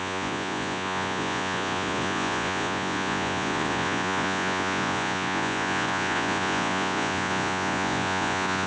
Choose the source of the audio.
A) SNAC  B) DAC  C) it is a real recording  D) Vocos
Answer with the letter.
D